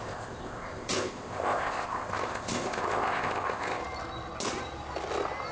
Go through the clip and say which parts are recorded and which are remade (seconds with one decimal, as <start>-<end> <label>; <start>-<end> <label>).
0.0-3.8 remade; 3.8-5.5 recorded